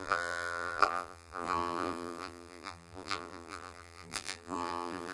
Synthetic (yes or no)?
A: yes